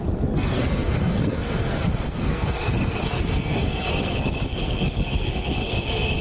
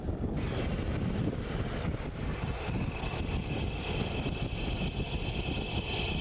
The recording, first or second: second